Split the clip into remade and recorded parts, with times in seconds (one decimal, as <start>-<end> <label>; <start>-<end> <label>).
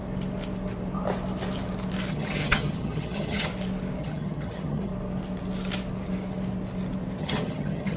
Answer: 0.0-2.1 recorded; 2.1-3.5 remade; 3.5-4.0 recorded; 4.0-4.9 remade; 4.9-7.2 recorded; 7.2-8.0 remade